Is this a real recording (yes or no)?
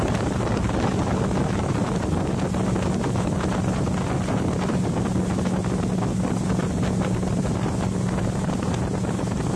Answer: yes